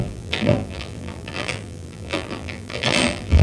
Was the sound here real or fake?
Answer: fake